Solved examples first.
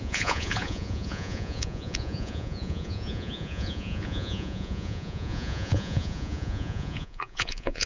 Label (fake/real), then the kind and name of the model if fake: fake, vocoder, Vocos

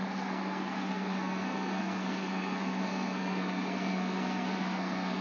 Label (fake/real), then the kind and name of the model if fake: fake, codec, SNAC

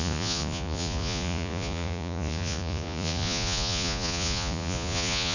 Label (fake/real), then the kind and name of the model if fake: fake, vocoder, Vocos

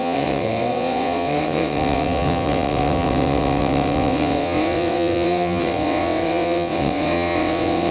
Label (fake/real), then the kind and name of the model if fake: fake, vocoder, WaveNeXt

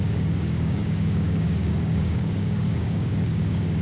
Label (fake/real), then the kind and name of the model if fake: fake, codec, DAC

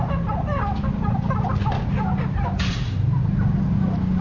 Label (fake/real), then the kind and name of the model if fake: real